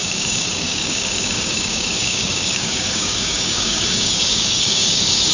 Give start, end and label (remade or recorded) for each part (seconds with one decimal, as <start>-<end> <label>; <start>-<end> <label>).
0.0-5.3 remade